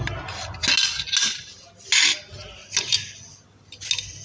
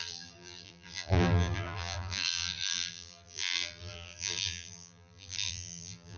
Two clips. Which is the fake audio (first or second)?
second